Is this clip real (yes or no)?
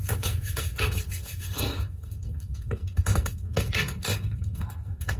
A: no